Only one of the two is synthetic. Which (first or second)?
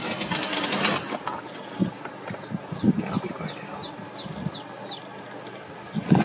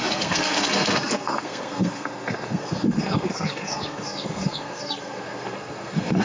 second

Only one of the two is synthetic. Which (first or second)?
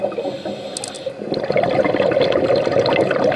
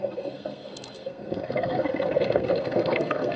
second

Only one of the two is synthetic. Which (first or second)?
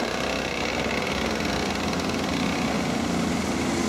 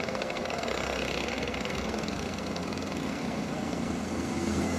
second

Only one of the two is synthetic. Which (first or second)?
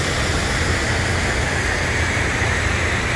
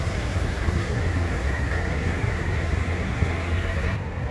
second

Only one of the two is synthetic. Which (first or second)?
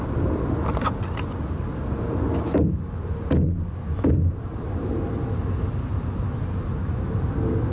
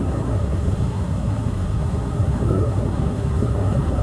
second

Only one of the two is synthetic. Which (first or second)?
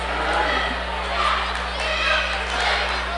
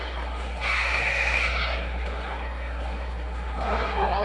second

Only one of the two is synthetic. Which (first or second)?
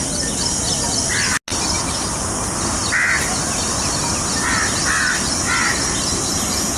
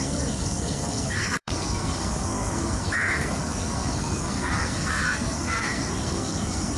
second